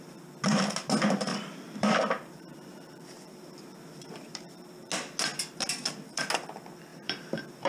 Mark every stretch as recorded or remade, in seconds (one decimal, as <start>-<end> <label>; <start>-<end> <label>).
0.0-1.3 recorded; 1.3-4.9 remade; 4.9-6.9 recorded; 6.9-7.7 remade